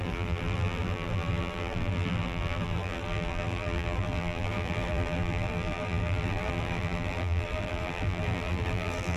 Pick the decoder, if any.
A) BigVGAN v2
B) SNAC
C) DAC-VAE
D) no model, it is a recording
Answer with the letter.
A